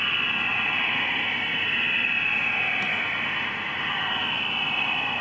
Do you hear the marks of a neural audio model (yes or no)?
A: no